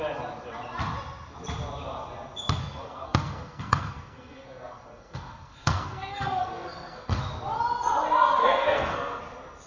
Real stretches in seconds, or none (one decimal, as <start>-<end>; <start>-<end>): 0.0-2.6; 7.2-8.4; 9.2-9.7